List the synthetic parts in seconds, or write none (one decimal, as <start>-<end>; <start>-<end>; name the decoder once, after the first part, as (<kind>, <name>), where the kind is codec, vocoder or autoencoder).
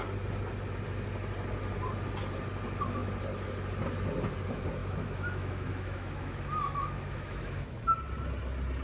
4.8-7.8 (autoencoder, DAC-VAE)